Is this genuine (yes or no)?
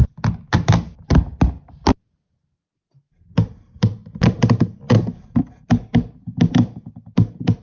yes